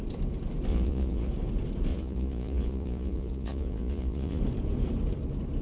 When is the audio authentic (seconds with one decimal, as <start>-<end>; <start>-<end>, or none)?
0.0-0.7; 1.3-1.9; 4.4-5.6